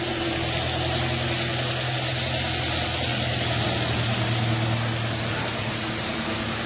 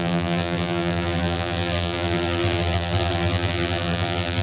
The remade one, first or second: second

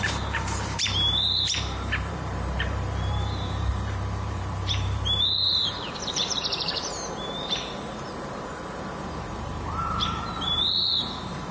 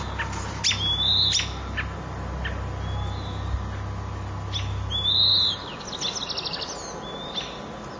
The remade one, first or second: first